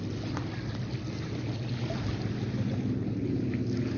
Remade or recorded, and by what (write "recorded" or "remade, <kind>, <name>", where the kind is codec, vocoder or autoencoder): recorded